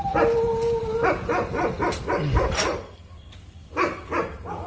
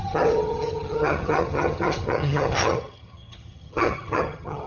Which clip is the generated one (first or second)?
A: second